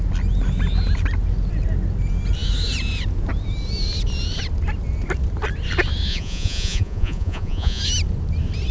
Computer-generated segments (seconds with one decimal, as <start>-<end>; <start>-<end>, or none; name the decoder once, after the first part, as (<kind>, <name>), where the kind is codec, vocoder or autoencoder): 6.1-7.8 (vocoder, Vocos)